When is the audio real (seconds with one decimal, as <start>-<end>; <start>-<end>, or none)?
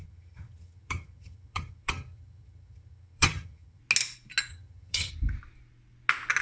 3.8-4.5; 5.1-6.4